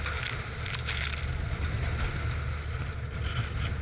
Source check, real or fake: real